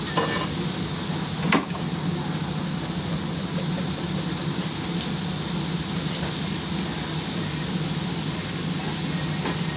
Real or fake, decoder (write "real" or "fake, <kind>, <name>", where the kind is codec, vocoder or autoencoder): real